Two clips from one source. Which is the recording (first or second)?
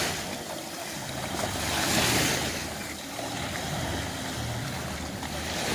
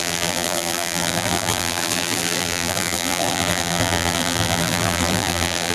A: first